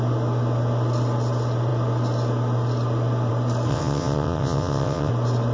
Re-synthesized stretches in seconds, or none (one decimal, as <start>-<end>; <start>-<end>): 3.7-5.1